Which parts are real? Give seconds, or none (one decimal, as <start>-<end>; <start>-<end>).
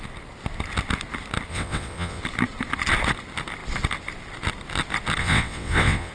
0.0-1.5; 2.2-5.2